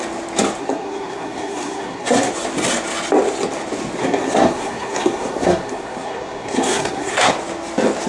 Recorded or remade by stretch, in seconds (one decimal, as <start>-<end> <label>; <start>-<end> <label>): 0.0-0.6 recorded; 0.6-2.3 remade; 2.3-4.0 recorded; 4.0-7.3 remade; 7.3-8.1 recorded

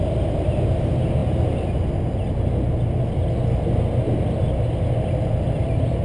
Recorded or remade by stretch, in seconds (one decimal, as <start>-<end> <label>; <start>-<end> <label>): 0.0-6.0 recorded

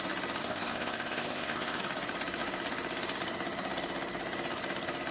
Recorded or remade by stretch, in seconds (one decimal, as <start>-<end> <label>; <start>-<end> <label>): 0.0-0.4 recorded; 0.4-1.8 remade; 1.8-5.1 recorded

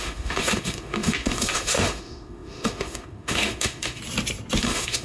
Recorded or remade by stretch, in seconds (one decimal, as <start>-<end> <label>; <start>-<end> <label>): 0.0-4.0 remade; 4.0-4.6 recorded; 4.6-5.0 remade

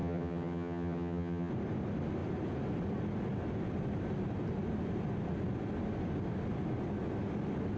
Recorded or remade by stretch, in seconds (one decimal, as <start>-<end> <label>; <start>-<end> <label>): 0.0-1.5 remade; 1.5-7.8 recorded

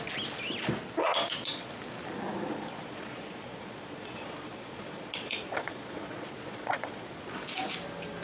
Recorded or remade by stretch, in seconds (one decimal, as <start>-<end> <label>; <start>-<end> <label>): 0.0-1.0 recorded; 1.0-1.7 remade; 1.7-2.5 recorded; 2.5-7.1 remade; 7.1-8.2 recorded

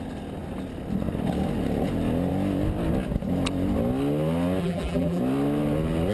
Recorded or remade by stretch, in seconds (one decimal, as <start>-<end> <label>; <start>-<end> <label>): 0.0-4.6 recorded; 4.6-5.2 remade; 5.2-6.1 recorded

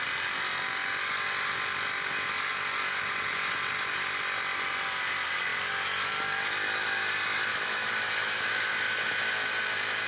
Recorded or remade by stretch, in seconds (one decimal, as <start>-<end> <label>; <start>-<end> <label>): 0.0-7.5 recorded; 7.5-8.5 remade; 8.5-10.1 recorded